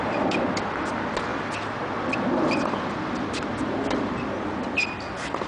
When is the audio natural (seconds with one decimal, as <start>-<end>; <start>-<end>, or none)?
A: 0.0-5.5